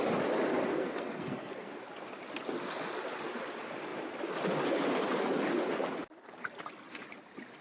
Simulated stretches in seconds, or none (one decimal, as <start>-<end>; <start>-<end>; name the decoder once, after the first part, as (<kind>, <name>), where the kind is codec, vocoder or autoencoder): 0.7-1.8 (codec, SNAC)

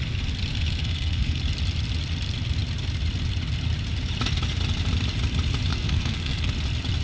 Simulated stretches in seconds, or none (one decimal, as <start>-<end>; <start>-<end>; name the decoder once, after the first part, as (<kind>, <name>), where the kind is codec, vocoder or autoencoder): 0.8-1.4 (codec, SNAC); 5.7-6.5